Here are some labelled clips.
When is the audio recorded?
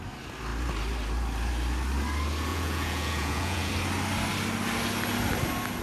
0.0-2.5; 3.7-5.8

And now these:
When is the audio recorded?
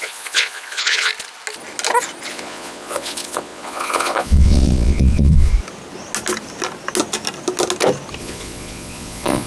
1.1-2.3; 5.5-8.2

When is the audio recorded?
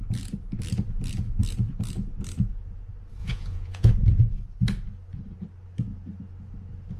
0.0-3.2; 3.9-7.0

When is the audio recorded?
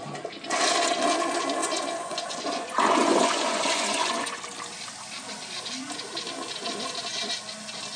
0.0-1.6; 4.4-8.0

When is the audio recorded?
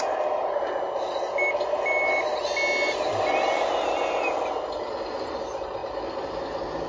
0.0-6.9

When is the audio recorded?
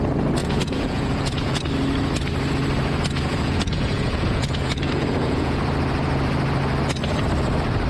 0.0-0.4; 1.6-3.3; 5.6-7.9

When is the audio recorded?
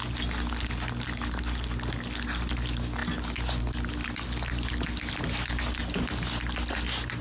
0.0-7.2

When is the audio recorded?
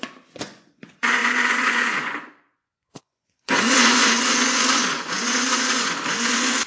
none